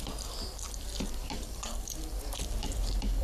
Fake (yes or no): yes